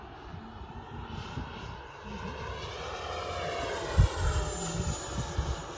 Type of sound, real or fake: real